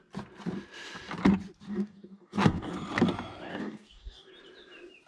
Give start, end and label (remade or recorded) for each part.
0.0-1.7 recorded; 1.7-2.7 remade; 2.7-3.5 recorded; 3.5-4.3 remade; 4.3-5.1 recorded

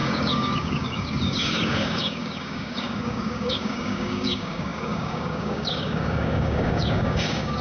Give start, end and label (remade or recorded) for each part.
0.0-7.6 remade

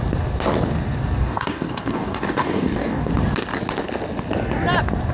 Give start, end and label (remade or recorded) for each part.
0.0-1.2 recorded; 1.2-3.1 remade; 3.1-5.1 recorded

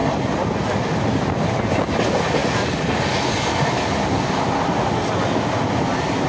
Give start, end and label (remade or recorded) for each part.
0.0-6.3 recorded

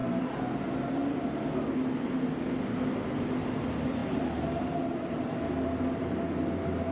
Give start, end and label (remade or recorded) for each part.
0.0-6.9 recorded

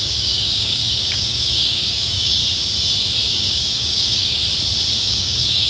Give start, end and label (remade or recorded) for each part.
0.0-2.4 remade; 2.4-3.3 recorded; 3.3-4.4 remade; 4.4-5.0 recorded; 5.0-5.7 remade